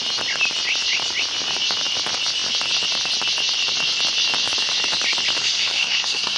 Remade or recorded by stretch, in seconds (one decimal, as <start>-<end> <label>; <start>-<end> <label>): 0.0-5.4 recorded; 5.4-6.4 remade